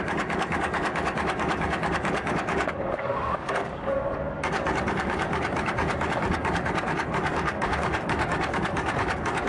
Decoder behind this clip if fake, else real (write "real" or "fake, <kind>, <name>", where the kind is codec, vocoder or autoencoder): fake, codec, DAC